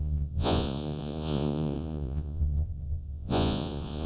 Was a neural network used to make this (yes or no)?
yes